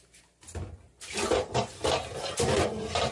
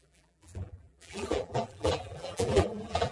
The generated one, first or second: second